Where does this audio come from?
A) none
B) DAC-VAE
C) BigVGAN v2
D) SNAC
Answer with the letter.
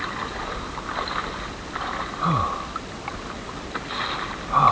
A